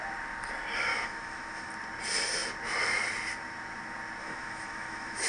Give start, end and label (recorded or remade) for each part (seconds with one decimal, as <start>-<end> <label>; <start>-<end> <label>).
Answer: 0.0-0.9 recorded; 0.9-1.7 remade; 1.7-4.2 recorded; 4.2-5.3 remade